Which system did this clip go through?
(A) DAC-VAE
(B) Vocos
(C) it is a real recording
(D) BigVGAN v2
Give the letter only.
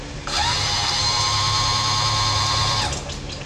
D